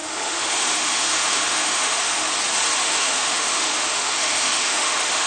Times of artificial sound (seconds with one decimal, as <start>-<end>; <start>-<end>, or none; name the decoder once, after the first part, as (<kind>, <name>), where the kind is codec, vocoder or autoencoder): 0.0-2.3 (autoencoder, DAC-VAE); 2.8-5.3